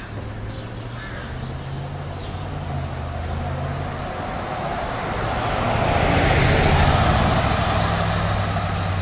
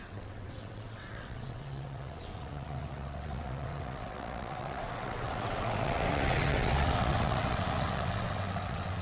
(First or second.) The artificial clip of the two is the second